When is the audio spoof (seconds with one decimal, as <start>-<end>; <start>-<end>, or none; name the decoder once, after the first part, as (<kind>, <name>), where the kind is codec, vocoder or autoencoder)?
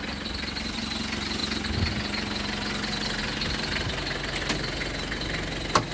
none